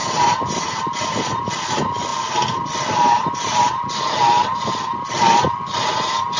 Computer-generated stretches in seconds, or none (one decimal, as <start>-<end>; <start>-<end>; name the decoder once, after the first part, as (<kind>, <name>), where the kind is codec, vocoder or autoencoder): 0.0-0.8 (vocoder, BigVGAN v2)

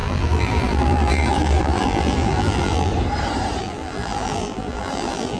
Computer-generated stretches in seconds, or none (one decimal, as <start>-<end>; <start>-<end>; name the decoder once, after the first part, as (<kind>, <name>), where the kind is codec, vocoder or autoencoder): 0.0-2.9 (vocoder, BigVGAN v2); 3.6-5.4

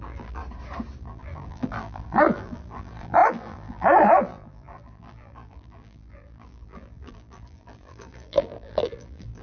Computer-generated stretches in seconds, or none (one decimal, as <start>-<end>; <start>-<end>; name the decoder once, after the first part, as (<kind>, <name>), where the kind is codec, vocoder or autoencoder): 0.0-0.4 (vocoder, BigVGAN v2); 1.0-9.4

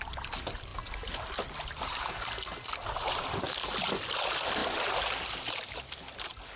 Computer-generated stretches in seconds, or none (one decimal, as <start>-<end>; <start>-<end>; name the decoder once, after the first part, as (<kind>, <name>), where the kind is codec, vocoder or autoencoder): none

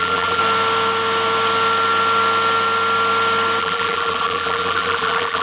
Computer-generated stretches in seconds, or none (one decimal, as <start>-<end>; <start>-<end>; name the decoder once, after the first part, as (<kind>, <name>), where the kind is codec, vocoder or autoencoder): 0.0-0.4 (vocoder, BigVGAN v2); 3.6-5.4

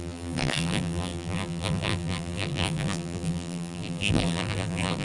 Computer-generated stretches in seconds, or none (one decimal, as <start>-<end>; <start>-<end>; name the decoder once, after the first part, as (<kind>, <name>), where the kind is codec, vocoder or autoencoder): 0.0-5.0 (vocoder, BigVGAN v2)

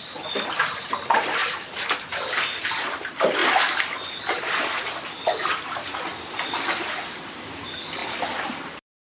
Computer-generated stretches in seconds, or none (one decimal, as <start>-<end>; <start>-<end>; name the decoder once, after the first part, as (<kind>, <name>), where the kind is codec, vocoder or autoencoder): 0.0-3.4 (vocoder, BigVGAN v2); 7.3-8.0; 8.5-9.2

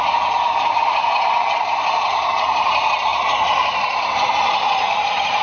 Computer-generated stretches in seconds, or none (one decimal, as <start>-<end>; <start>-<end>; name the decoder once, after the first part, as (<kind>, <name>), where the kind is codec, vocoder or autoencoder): 0.0-5.4 (vocoder, BigVGAN v2)